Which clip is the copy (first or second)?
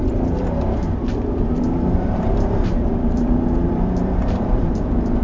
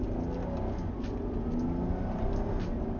first